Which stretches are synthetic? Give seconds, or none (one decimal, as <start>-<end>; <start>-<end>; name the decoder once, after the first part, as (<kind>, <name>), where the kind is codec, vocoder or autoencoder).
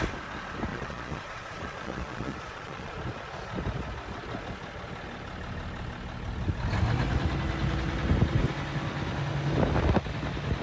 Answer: 0.7-2.9 (vocoder, Vocos)